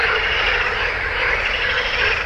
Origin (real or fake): real